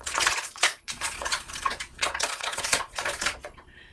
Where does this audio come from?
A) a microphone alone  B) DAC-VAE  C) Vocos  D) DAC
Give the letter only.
C